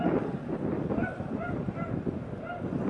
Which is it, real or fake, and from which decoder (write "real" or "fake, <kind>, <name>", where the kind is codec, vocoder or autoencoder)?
real